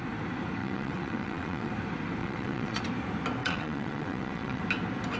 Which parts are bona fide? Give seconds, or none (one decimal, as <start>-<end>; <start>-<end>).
0.0-0.6; 1.7-2.2; 2.8-3.4; 4.6-5.2